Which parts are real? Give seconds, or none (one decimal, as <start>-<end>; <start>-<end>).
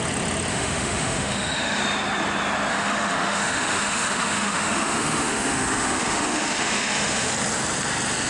0.0-0.5; 1.8-2.7; 7.3-8.3